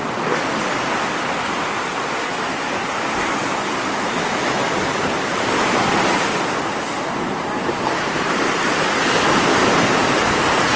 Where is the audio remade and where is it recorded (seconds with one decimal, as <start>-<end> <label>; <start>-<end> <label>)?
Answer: 0.0-2.3 recorded; 2.3-2.8 remade; 2.8-3.8 recorded; 3.8-4.7 remade; 4.7-10.8 recorded